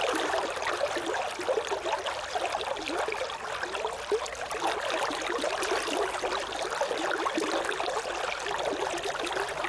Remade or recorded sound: recorded